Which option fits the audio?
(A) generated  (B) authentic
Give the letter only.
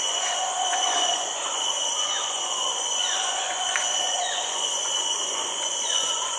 A